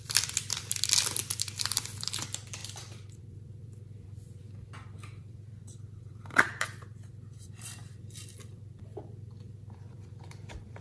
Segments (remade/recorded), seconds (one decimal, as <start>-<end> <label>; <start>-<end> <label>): 0.0-4.4 remade; 4.4-5.2 recorded; 5.2-10.8 remade